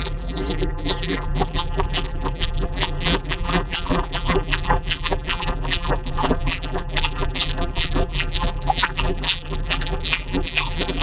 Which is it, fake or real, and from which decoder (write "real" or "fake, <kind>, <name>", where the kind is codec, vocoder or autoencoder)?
fake, vocoder, BigVGAN v2